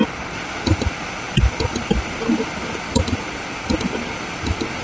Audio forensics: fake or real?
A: real